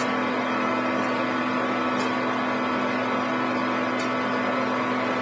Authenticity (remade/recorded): recorded